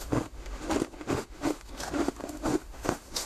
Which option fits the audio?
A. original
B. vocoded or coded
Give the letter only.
B